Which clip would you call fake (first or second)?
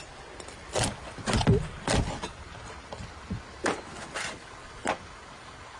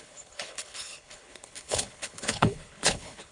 second